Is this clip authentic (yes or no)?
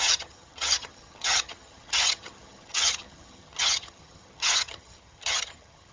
no